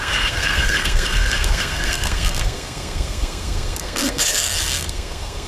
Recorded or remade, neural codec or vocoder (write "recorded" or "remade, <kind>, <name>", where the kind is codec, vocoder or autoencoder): remade, codec, SNAC